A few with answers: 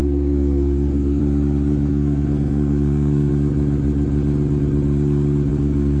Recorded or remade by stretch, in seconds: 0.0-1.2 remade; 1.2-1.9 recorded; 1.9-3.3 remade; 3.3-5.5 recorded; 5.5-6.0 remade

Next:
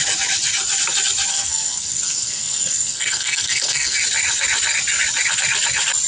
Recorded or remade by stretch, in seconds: 0.0-1.3 recorded; 1.3-4.0 remade; 4.0-6.1 recorded

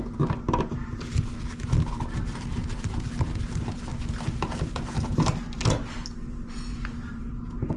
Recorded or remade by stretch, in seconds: 0.0-7.8 recorded

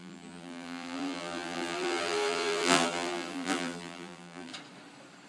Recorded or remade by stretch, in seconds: 0.0-4.5 remade; 4.5-5.3 recorded

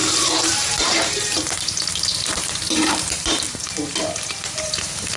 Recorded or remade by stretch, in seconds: 0.0-5.2 remade

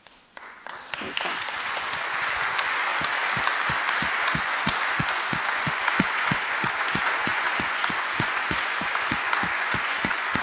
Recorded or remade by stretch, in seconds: 0.0-2.9 remade; 2.9-4.1 recorded; 4.1-10.4 remade

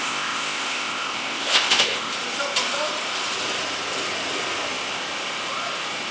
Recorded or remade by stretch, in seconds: 0.0-2.1 remade; 2.1-6.1 recorded